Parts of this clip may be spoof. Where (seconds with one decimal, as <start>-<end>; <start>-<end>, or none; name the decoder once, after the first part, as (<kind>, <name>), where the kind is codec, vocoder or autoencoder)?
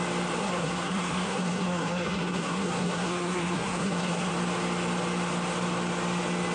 0.4-4.3 (codec, SNAC)